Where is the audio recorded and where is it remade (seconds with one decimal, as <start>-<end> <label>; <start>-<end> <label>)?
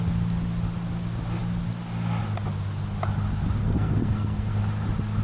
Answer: 0.0-3.6 recorded; 3.6-4.6 remade; 4.6-5.2 recorded